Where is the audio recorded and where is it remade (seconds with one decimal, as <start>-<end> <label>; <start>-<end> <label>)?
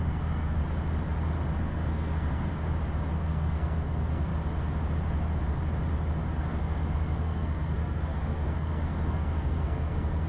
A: 0.0-0.6 remade; 0.6-1.6 recorded; 1.6-2.5 remade; 2.5-3.1 recorded; 3.1-4.3 remade; 4.3-6.4 recorded; 6.4-10.3 remade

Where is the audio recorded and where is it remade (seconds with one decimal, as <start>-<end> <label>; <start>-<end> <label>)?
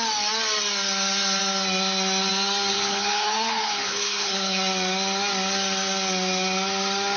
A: 0.0-2.7 recorded; 2.7-4.6 remade; 4.6-7.2 recorded